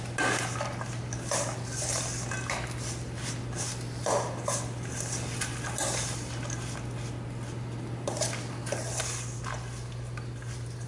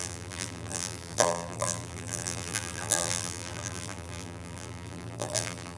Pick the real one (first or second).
first